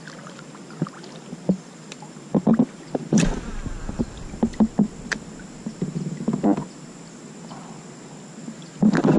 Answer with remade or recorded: recorded